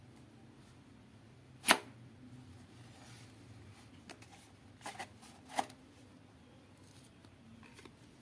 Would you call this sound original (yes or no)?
yes